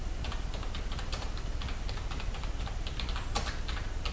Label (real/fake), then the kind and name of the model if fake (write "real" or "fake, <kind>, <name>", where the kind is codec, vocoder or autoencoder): real